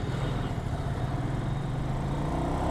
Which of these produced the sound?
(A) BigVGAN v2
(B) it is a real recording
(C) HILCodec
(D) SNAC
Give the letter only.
B